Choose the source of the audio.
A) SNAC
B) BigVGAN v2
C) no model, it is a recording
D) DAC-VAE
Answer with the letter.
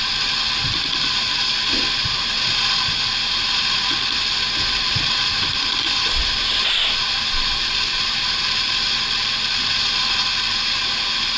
C